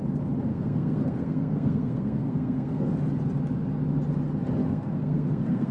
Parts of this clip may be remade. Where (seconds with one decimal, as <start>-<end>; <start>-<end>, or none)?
0.5-2.9; 4.6-5.7

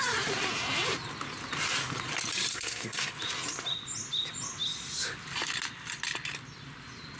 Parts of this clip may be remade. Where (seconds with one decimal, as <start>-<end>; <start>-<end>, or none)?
2.5-3.1

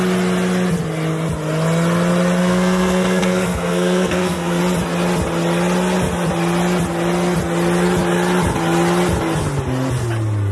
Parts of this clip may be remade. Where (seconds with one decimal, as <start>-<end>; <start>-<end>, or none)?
2.4-4.6

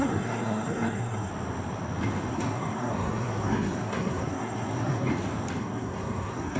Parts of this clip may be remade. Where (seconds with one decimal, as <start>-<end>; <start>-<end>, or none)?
0.0-1.3; 2.3-5.1; 5.6-6.6